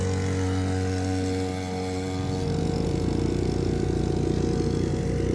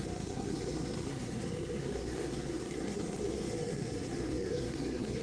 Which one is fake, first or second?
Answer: second